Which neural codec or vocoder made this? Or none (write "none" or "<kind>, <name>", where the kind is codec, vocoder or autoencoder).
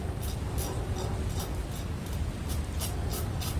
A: none